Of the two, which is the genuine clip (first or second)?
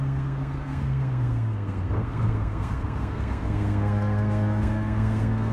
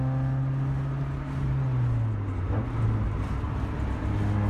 second